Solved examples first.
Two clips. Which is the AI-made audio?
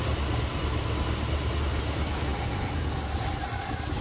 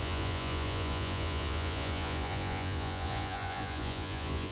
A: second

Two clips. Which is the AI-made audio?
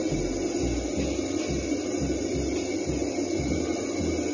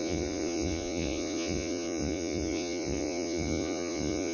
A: second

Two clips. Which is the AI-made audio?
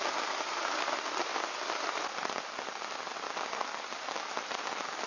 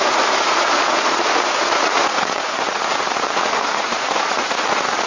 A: second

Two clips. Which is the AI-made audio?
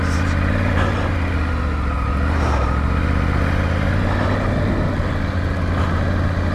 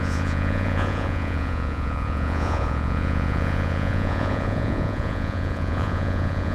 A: second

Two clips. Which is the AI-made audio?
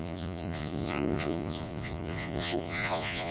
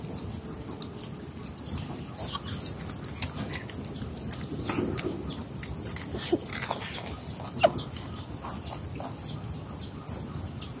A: first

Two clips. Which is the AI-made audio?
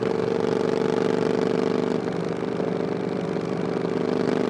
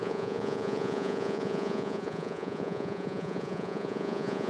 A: second